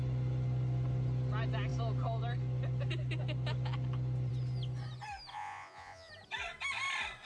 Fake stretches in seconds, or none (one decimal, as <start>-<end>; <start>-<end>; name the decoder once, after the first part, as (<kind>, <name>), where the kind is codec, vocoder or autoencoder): 5.3-6.1 (vocoder, Vocos)